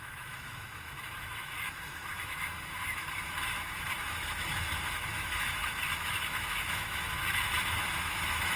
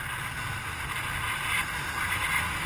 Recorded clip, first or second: second